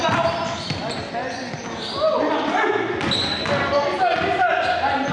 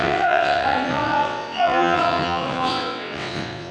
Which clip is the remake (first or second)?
second